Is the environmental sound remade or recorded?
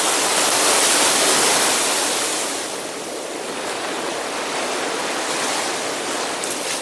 recorded